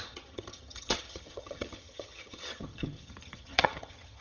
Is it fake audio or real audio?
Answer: fake